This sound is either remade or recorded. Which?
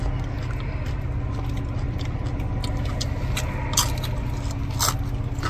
recorded